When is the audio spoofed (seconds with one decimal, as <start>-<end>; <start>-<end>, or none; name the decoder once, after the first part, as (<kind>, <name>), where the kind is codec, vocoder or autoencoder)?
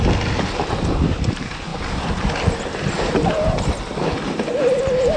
none